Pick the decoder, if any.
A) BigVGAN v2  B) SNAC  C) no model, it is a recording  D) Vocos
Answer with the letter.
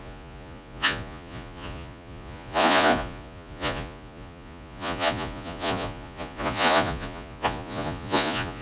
D